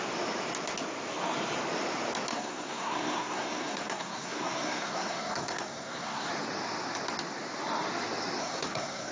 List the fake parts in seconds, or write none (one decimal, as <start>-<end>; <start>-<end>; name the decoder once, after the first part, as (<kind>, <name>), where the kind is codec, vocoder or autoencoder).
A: 2.3-6.3 (codec, SNAC); 8.4-9.1